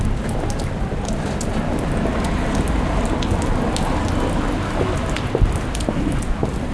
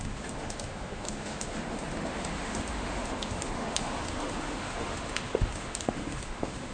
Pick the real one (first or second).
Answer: first